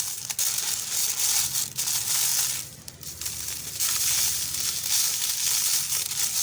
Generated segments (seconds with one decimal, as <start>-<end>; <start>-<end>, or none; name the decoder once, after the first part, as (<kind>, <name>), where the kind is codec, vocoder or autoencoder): none